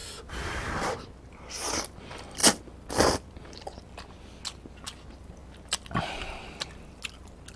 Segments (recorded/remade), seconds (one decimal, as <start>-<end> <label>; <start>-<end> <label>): 0.0-7.6 recorded